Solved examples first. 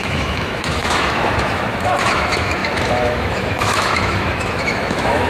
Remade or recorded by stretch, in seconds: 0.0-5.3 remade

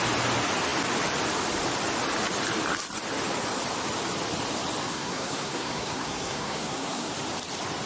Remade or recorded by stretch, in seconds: 0.0-4.8 recorded; 4.8-7.1 remade; 7.1-7.9 recorded

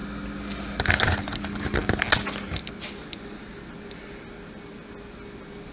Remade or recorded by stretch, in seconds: 0.0-5.7 recorded

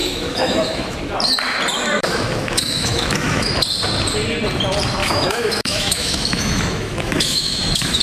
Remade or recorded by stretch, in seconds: 0.0-1.0 remade; 1.0-2.0 recorded; 2.0-3.5 remade; 3.5-5.0 recorded; 5.0-8.0 remade

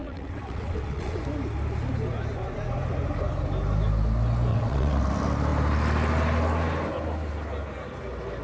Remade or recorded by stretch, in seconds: 0.0-1.2 remade; 1.2-4.5 recorded; 4.5-5.0 remade; 5.0-8.4 recorded

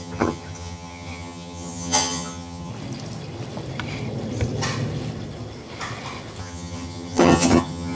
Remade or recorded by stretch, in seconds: 0.0-2.7 remade; 2.7-6.4 recorded; 6.4-7.9 remade

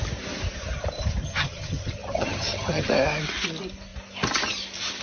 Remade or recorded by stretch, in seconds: 0.0-1.2 recorded; 1.2-2.9 remade; 2.9-5.0 recorded